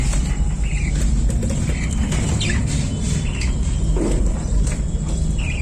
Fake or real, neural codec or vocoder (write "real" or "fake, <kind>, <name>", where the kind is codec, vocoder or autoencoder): real